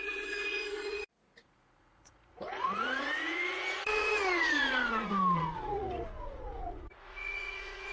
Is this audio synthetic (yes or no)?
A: yes